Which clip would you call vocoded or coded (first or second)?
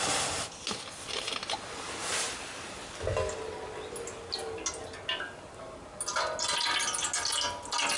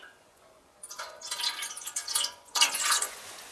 second